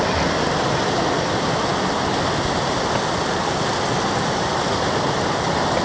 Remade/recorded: recorded